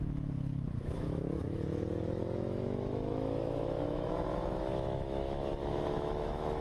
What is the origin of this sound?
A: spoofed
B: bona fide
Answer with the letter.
A